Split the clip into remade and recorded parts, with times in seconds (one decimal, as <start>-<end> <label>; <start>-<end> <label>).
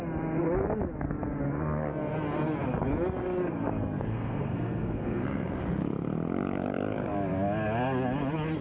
0.0-4.1 recorded; 4.1-5.6 remade; 5.6-8.6 recorded